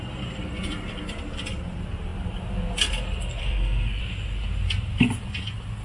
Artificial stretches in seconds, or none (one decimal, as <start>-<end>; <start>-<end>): 3.4-4.0